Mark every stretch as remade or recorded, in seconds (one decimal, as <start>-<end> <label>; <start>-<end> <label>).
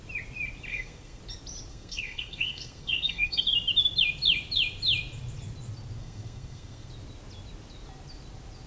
0.0-0.7 recorded; 0.7-1.2 remade; 1.2-1.7 recorded; 1.7-3.4 remade; 3.4-6.0 recorded; 6.0-6.9 remade; 6.9-8.7 recorded